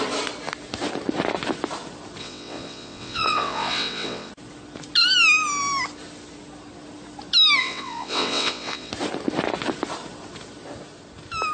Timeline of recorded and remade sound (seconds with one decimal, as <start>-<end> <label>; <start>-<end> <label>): 0.0-2.2 recorded; 2.2-4.3 remade; 4.3-7.6 recorded; 7.6-8.9 remade; 8.9-11.5 recorded